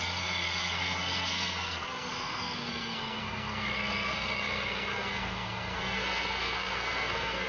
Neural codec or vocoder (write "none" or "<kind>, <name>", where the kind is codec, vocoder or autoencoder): codec, SNAC